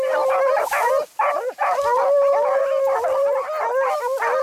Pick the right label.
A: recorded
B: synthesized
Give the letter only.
A